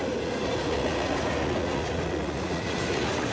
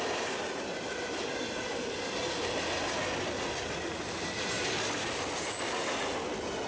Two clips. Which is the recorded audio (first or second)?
second